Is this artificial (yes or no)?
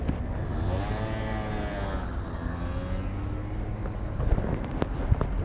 no